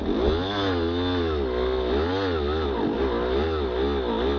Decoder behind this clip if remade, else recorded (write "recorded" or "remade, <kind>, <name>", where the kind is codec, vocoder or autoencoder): recorded